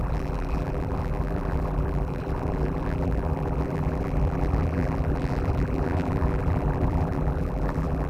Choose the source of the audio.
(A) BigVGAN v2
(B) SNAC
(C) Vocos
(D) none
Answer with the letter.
A